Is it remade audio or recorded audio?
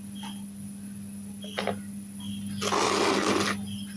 recorded